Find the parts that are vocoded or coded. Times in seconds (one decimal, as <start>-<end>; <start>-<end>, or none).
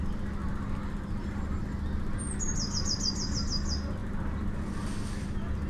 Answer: none